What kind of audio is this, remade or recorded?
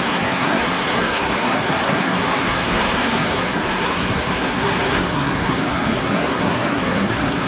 remade